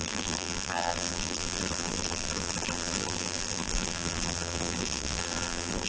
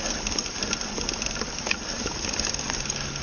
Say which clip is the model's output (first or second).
first